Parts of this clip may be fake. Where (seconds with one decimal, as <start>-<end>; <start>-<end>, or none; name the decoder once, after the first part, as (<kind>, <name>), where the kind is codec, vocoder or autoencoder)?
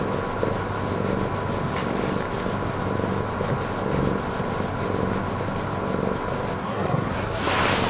6.6-7.5 (codec, SNAC)